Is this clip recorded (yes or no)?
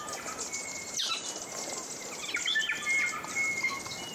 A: yes